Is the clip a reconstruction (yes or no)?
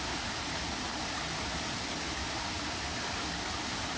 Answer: no